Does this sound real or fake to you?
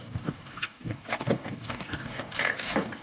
fake